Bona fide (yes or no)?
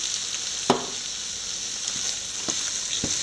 yes